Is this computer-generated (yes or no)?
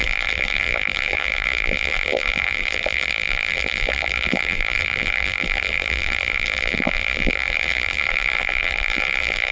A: yes